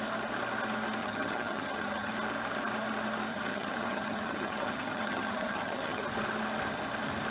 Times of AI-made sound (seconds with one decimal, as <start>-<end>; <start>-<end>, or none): 1.0-2.1; 3.3-6.0